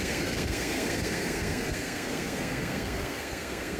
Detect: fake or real fake